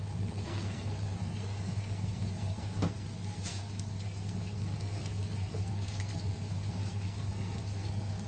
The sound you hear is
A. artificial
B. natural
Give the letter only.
A